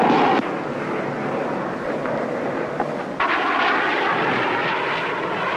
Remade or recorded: recorded